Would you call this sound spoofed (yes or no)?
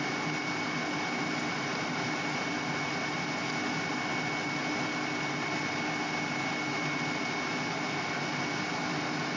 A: no